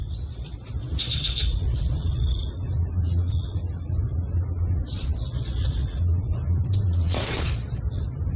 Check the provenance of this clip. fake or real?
fake